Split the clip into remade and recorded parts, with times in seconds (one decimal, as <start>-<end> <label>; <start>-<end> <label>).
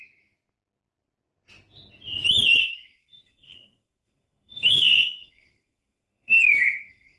0.0-2.6 recorded; 2.6-7.2 remade